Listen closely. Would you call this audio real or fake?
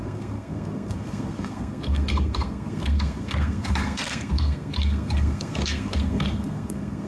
fake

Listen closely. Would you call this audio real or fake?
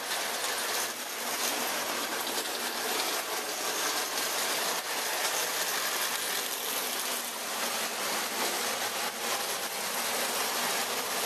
real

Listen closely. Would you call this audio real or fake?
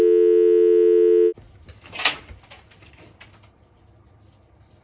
real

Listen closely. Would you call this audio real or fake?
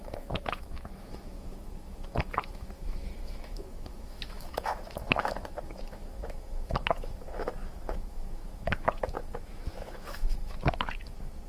fake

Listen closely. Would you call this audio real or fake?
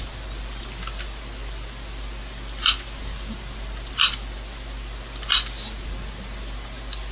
real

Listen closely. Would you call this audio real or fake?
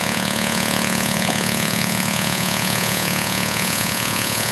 fake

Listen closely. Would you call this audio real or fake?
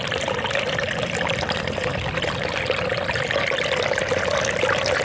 real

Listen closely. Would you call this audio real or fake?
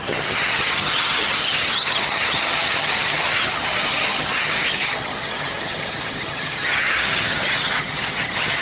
fake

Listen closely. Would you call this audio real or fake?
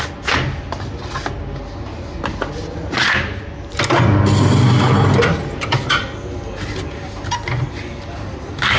real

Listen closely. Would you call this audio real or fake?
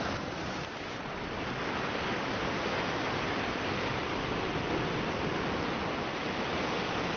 fake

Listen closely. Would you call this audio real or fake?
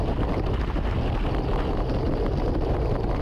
real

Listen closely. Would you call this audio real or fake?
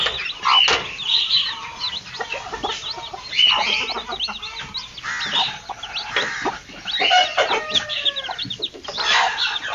real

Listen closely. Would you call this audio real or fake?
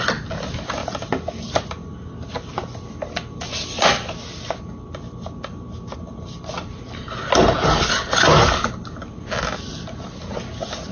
real